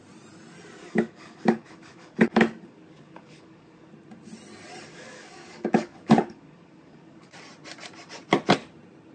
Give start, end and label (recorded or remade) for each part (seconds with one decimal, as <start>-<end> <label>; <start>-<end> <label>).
0.0-0.8 recorded; 0.8-3.9 remade; 3.9-4.9 recorded; 4.9-7.3 remade; 7.3-9.1 recorded